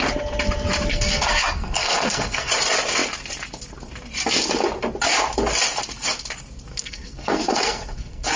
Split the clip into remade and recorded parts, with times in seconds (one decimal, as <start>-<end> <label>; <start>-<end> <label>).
0.0-0.9 recorded; 0.9-2.5 remade; 2.5-6.7 recorded; 6.7-8.4 remade